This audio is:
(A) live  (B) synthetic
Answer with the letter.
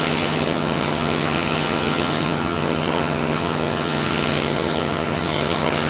B